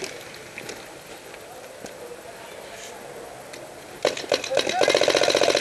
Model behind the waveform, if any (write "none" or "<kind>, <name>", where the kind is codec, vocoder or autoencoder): none